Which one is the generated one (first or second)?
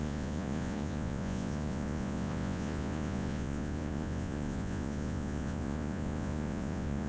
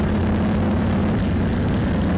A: first